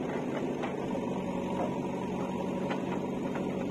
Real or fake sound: real